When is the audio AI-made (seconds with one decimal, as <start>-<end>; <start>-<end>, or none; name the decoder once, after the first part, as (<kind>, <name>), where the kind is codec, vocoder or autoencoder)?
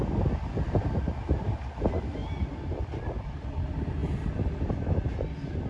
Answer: none